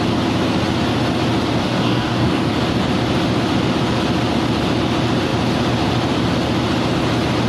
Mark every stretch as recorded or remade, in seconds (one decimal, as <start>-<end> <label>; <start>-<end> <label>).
0.0-1.6 recorded; 1.6-2.5 remade; 2.5-7.5 recorded